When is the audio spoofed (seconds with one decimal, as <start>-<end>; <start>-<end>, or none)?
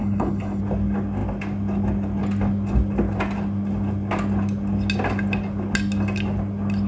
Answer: 0.0-0.6